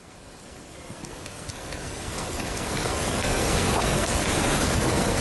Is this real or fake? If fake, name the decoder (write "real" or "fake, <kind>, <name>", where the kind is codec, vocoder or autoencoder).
fake, codec, SNAC